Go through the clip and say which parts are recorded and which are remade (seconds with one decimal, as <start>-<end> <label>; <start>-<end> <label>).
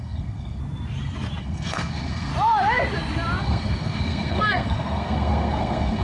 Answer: 0.0-0.6 remade; 0.6-1.4 recorded; 1.4-2.3 remade; 2.3-3.4 recorded; 3.4-6.0 remade